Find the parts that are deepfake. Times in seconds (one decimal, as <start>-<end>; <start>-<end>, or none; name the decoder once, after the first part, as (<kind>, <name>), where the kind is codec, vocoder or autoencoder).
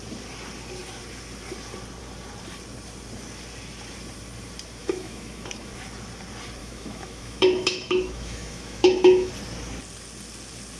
4.8-5.7 (autoencoder, DAC-VAE); 6.6-9.3